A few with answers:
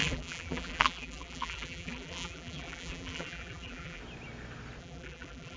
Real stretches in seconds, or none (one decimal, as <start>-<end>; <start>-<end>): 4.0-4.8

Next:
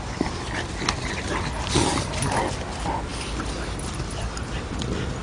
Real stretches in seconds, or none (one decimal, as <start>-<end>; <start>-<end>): 0.0-5.2

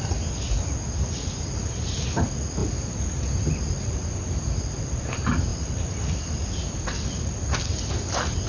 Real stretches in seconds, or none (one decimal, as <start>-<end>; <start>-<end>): 0.0-8.5